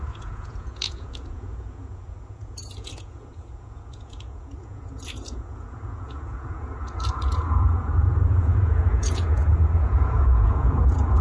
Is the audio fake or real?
fake